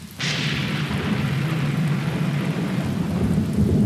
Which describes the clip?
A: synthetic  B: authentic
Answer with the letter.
B